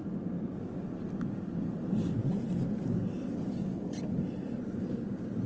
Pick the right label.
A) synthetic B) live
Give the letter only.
B